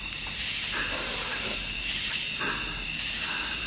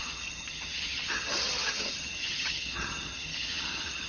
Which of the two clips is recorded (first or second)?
first